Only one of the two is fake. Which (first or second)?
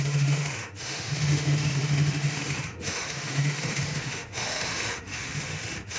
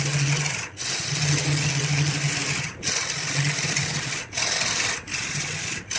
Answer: first